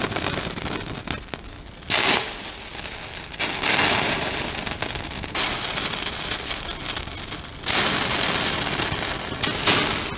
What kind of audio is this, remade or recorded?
recorded